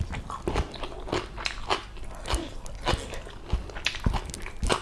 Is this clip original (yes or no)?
yes